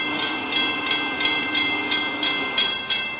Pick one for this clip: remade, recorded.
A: recorded